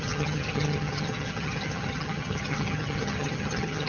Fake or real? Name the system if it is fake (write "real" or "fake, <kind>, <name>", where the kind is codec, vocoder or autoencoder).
fake, vocoder, HiFi-GAN